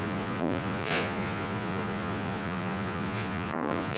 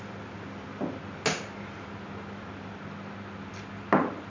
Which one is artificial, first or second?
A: first